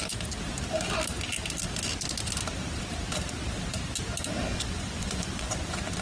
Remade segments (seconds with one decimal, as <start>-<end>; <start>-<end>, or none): 4.5-5.6